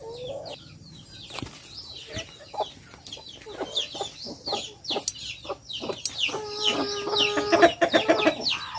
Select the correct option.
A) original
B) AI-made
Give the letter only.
A